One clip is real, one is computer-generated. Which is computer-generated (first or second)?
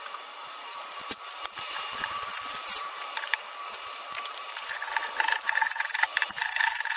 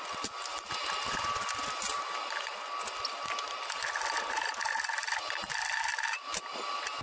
first